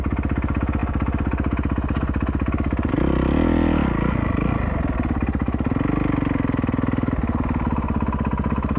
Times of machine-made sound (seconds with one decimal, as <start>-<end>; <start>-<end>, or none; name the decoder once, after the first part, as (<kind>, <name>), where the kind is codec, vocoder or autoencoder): none